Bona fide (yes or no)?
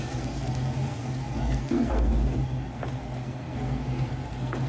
no